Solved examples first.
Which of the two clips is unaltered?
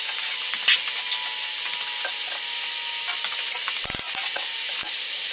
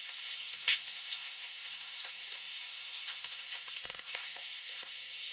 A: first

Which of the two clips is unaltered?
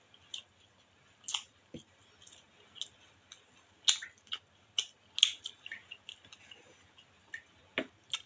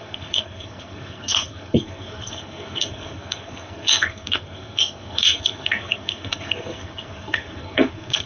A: first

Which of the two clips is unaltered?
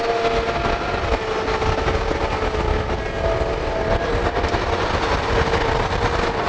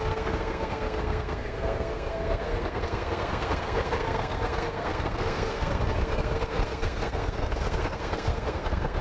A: first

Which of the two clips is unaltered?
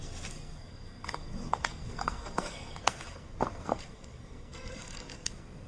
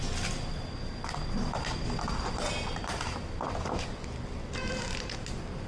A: second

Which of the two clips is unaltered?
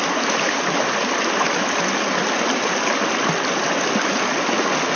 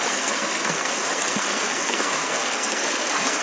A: first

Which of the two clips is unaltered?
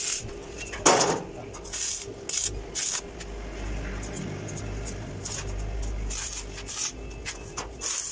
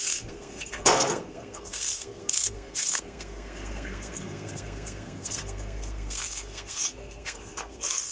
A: first